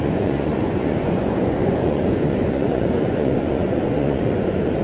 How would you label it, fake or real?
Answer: fake